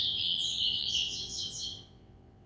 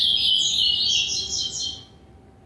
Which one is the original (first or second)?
second